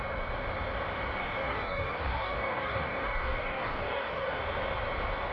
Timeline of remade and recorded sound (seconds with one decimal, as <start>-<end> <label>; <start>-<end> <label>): 0.0-1.2 recorded; 1.2-4.4 remade; 4.4-5.3 recorded